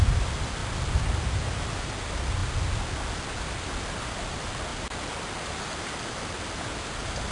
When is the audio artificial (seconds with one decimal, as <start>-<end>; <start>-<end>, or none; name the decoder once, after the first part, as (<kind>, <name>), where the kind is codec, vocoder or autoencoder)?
none